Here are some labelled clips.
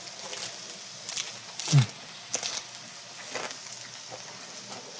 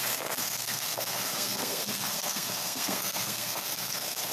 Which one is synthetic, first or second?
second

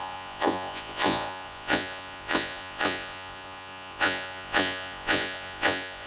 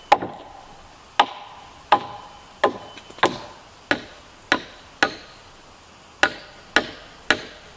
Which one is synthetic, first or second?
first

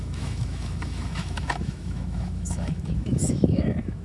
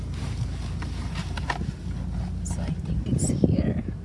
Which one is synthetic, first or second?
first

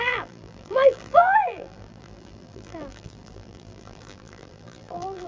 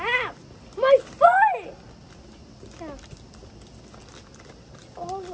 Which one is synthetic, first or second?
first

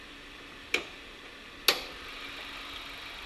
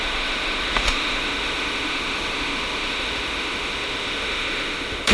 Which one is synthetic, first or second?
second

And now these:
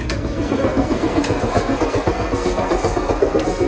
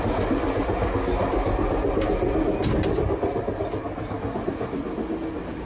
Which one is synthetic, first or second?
first